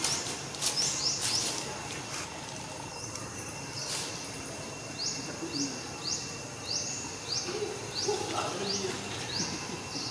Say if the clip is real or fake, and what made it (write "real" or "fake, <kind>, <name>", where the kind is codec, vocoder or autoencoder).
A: real